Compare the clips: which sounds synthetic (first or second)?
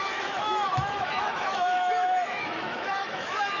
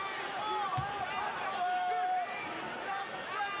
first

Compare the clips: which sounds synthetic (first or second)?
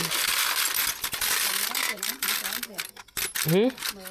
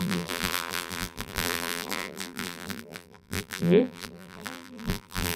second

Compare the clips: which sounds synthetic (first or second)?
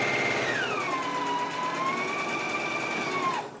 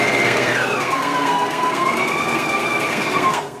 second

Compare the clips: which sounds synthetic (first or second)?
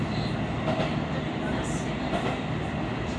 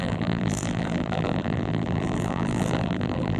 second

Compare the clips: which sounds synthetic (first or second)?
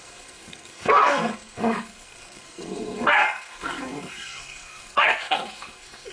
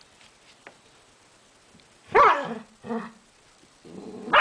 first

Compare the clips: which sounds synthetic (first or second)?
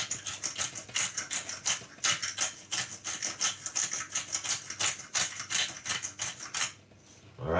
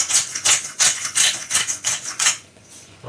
second